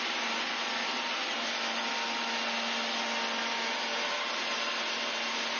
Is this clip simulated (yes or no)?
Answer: no